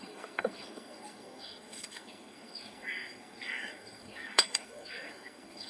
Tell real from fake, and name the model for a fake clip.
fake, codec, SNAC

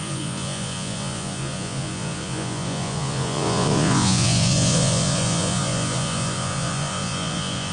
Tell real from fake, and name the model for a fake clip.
fake, vocoder, Vocos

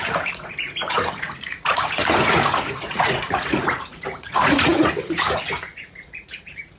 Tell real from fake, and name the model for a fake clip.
fake, vocoder, Vocos